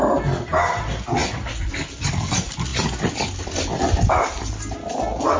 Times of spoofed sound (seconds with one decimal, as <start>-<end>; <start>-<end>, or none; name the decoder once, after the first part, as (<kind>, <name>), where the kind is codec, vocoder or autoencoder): none